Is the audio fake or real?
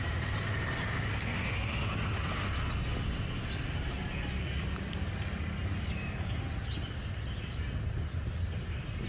real